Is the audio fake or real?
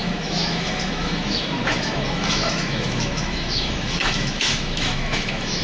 fake